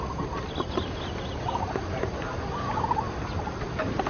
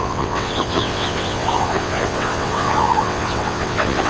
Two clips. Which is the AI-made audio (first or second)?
second